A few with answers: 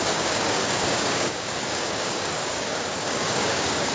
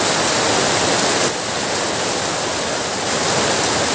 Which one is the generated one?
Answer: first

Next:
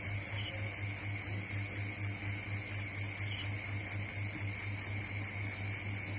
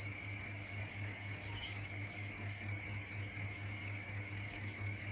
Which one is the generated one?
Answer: second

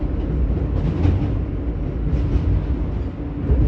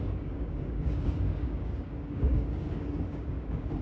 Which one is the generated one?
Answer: second